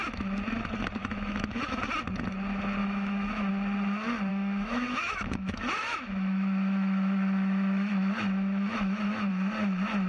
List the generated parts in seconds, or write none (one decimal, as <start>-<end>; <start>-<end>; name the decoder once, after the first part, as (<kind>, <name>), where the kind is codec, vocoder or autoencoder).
1.0-1.8 (autoencoder, DAC-VAE); 2.8-3.5; 4.3-9.3